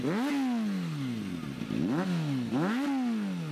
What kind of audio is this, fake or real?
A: real